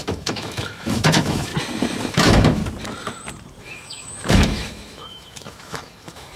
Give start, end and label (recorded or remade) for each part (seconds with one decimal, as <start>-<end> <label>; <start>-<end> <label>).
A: 0.0-1.5 remade; 1.5-2.1 recorded; 2.1-2.6 remade; 2.6-3.6 recorded; 3.6-6.4 remade